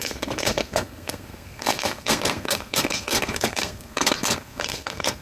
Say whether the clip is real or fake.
fake